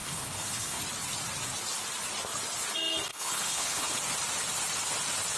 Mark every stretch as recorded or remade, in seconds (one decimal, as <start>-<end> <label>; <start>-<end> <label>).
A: 0.0-0.8 remade; 0.8-3.1 recorded; 3.1-4.0 remade; 4.0-5.4 recorded